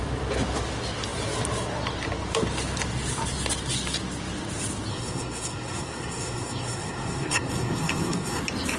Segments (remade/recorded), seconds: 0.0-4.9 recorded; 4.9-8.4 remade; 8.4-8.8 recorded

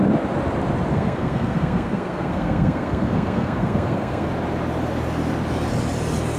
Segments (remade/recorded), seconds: 0.0-0.9 recorded; 0.9-4.3 remade; 4.3-6.4 recorded

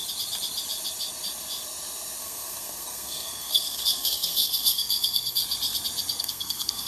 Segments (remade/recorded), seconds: 0.0-2.2 recorded; 2.2-5.4 remade; 5.4-6.2 recorded; 6.2-6.9 remade